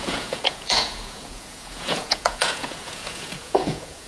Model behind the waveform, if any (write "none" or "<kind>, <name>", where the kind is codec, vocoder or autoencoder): vocoder, Vocos